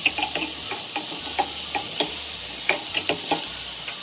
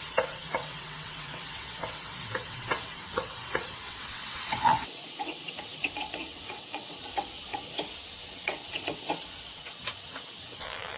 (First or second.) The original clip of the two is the first